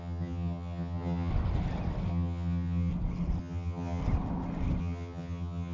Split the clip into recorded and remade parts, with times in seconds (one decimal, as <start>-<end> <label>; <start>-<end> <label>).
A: 0.0-1.3 remade; 1.3-2.1 recorded; 2.1-2.9 remade; 2.9-3.4 recorded; 3.4-4.0 remade; 4.0-4.8 recorded; 4.8-5.7 remade